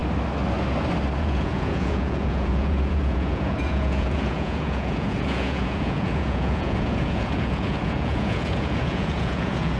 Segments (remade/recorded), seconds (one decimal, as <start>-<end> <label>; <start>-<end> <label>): 0.0-1.2 recorded; 1.2-9.8 remade